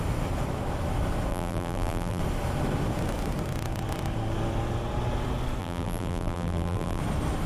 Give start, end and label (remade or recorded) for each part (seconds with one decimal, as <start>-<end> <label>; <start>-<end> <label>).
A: 0.0-1.3 recorded; 1.3-2.2 remade; 2.2-5.6 recorded; 5.6-7.0 remade; 7.0-7.5 recorded

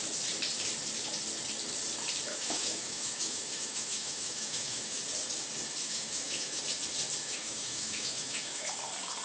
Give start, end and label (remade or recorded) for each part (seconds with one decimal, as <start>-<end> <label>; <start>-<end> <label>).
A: 0.0-2.3 recorded; 2.3-5.0 remade; 5.0-5.8 recorded; 5.8-6.6 remade; 6.6-7.2 recorded; 7.2-8.7 remade; 8.7-9.2 recorded

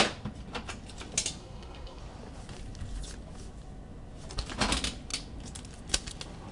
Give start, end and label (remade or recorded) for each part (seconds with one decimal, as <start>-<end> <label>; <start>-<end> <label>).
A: 0.0-1.4 recorded; 1.4-2.0 remade; 2.0-6.5 recorded

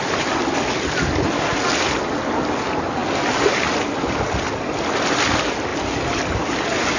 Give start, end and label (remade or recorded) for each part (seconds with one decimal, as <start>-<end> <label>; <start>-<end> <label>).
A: 0.0-7.0 recorded